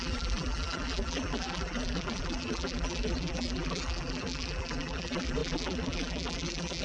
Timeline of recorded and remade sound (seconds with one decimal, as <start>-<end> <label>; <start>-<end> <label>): 0.0-6.8 remade